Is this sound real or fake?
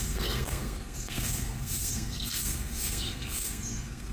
fake